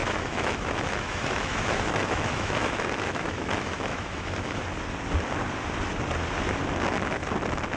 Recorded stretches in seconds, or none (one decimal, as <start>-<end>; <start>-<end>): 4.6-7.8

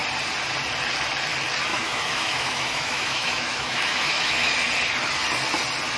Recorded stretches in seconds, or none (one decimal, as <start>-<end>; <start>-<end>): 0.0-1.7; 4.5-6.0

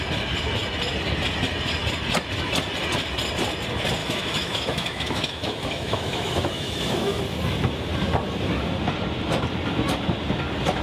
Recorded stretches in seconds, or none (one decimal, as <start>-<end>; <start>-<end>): 0.0-4.0; 7.2-10.8

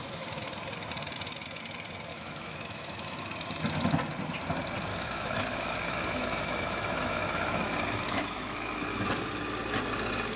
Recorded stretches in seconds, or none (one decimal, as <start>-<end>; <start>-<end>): 0.0-2.1; 3.2-4.9; 9.1-10.4